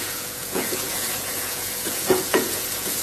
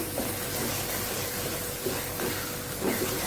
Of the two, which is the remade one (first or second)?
first